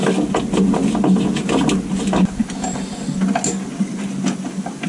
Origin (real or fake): real